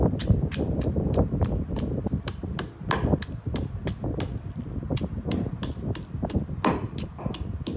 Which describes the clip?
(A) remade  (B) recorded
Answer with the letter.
B